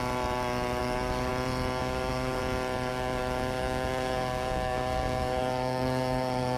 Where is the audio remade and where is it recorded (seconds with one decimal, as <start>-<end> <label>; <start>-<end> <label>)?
0.0-0.8 recorded; 0.8-1.3 remade; 1.3-1.8 recorded; 1.8-2.4 remade; 2.4-2.9 recorded; 2.9-6.6 remade